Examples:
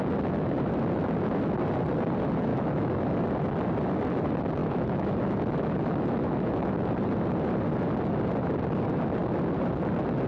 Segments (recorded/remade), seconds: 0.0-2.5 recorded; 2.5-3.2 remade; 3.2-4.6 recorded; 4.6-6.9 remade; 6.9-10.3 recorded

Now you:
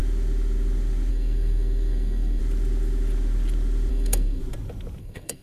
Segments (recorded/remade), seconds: 0.0-1.1 recorded; 1.1-2.4 remade; 2.4-3.9 recorded; 3.9-4.4 remade; 4.4-5.0 recorded; 5.0-5.4 remade

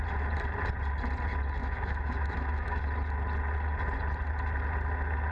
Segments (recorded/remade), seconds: 0.0-1.6 recorded; 1.6-2.8 remade; 2.8-5.3 recorded

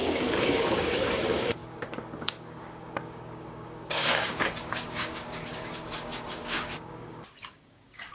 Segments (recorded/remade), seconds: 0.0-8.1 remade

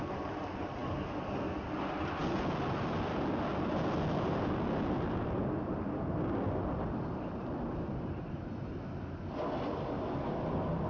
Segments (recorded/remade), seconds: 0.0-10.9 recorded